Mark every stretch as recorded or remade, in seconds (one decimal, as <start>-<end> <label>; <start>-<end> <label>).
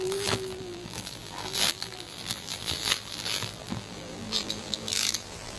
0.0-5.6 remade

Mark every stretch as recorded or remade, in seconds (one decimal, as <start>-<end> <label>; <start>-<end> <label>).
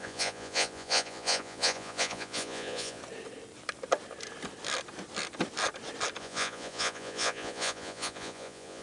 0.0-3.0 remade; 3.0-6.2 recorded; 6.2-8.8 remade